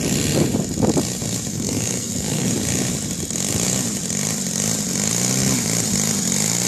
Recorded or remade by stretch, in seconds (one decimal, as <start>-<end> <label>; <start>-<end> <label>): 0.0-1.5 recorded; 1.5-2.5 remade; 2.5-6.7 recorded